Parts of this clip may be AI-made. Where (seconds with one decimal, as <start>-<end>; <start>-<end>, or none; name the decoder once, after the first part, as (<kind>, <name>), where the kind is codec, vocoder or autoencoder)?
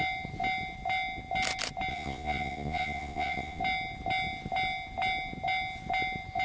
1.9-3.6 (vocoder, Vocos)